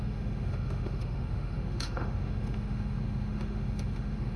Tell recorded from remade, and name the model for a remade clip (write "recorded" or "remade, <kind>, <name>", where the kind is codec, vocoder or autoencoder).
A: remade, autoencoder, DAC-VAE